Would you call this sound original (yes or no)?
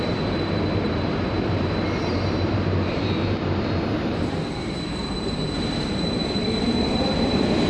no